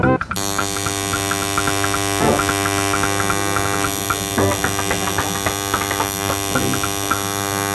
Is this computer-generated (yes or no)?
no